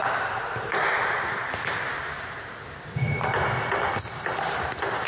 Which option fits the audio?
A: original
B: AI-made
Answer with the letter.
A